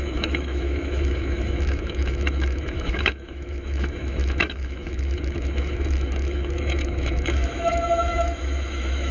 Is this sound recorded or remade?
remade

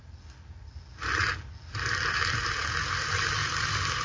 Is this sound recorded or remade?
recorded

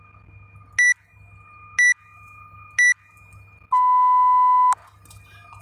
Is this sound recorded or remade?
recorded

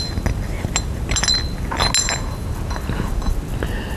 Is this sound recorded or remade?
recorded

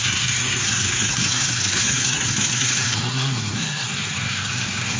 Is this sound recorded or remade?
remade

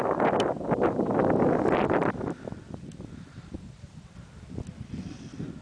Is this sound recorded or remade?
recorded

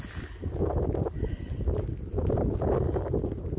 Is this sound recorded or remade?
recorded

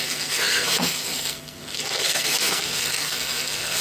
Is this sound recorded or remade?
remade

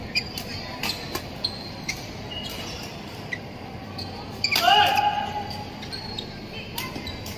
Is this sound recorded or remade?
recorded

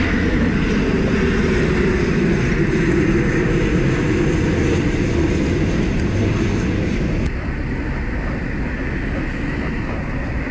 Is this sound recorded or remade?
recorded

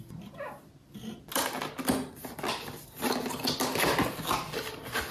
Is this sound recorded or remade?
recorded